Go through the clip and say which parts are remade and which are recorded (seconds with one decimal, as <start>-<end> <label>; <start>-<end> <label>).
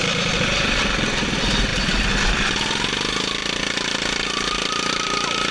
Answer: 0.0-0.8 remade; 0.8-5.5 recorded